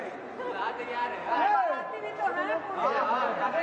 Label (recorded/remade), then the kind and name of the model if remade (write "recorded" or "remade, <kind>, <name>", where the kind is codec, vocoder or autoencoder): recorded